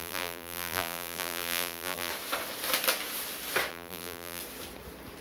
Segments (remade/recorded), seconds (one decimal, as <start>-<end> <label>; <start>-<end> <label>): 0.0-2.1 remade; 2.1-3.7 recorded; 3.7-4.4 remade; 4.4-5.2 recorded